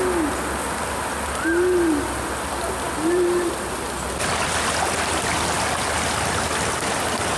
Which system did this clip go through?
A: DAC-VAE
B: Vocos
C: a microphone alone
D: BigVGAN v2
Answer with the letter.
C